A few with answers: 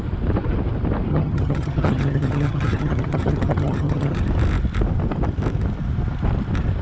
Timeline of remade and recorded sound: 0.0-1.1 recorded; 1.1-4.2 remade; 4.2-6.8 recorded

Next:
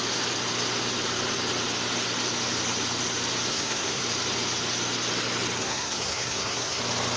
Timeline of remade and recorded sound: 0.0-3.5 recorded; 3.5-4.0 remade; 4.0-5.6 recorded; 5.6-6.8 remade; 6.8-7.2 recorded

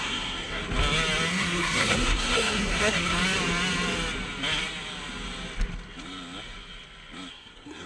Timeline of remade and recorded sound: 0.0-0.6 remade; 0.6-1.3 recorded; 1.3-3.2 remade; 3.2-7.3 recorded; 7.3-7.9 remade

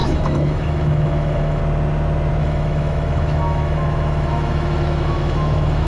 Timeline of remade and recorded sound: 0.0-1.6 remade; 1.6-2.4 recorded; 2.4-5.9 remade

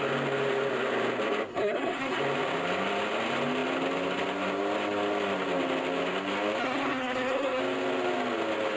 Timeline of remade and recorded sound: 0.0-1.5 recorded; 1.5-2.2 remade; 2.2-6.6 recorded; 6.6-7.6 remade; 7.6-8.8 recorded